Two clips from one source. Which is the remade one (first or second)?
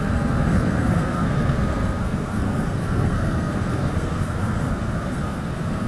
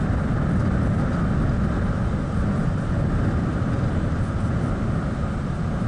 first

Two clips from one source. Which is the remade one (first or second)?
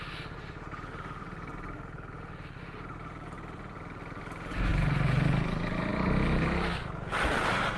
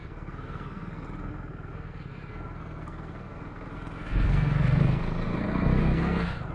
second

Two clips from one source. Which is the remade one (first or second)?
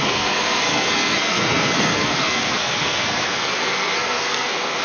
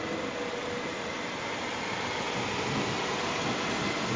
first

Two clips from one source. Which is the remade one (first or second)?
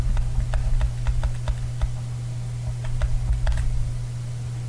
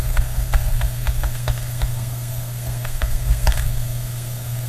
second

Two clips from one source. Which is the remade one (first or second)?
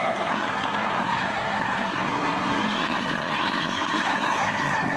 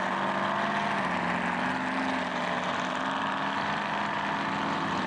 first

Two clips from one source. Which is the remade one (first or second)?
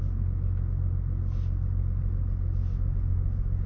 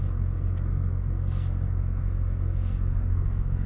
second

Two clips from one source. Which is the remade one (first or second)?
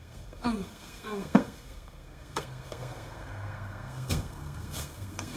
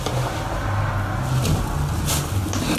first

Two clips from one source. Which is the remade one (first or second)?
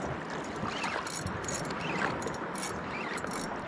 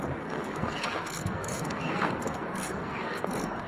second